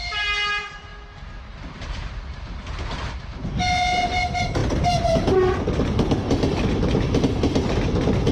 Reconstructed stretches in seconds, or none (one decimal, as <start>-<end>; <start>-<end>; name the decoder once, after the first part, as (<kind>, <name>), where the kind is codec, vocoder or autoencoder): none